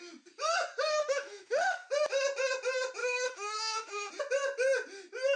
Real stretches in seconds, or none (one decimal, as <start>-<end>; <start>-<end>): 0.0-0.9; 1.9-3.0; 4.1-5.4